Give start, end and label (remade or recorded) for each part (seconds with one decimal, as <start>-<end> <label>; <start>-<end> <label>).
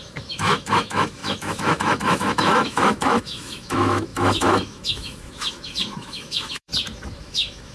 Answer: 0.0-6.7 remade; 6.7-7.2 recorded; 7.2-7.7 remade